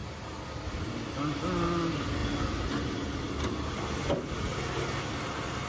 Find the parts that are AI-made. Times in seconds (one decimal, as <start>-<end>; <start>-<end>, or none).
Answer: none